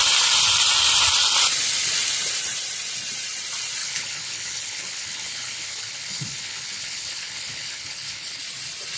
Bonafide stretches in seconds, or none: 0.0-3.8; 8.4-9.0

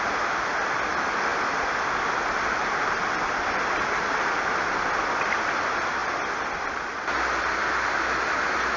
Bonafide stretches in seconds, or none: 0.0-8.8

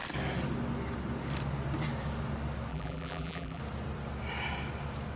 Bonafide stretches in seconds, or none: 0.0-2.7; 3.6-5.2

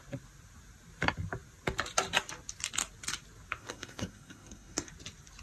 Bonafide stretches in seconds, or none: 0.0-3.6; 4.9-5.4

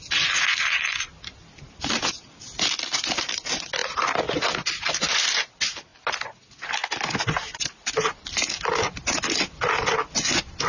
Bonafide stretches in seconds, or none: 0.0-10.7

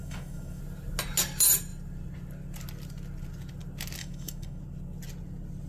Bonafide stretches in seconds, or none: 0.6-4.0; 4.6-5.7

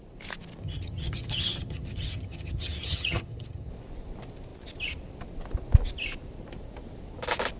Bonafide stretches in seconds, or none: 0.0-0.6; 3.7-7.6

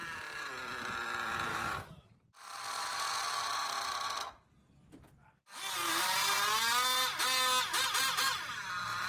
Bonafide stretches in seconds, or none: 0.0-1.5; 2.1-9.1